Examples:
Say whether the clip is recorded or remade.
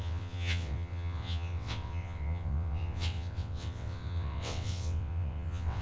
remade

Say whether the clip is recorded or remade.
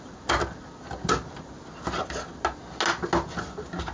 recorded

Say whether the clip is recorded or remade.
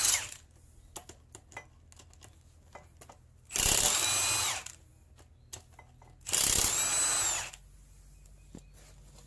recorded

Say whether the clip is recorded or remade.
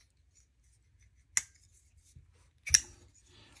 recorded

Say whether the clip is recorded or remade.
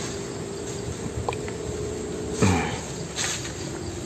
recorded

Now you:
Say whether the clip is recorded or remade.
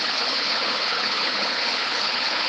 remade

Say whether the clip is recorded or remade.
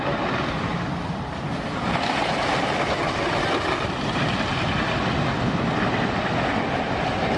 recorded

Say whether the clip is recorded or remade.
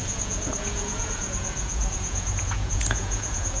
remade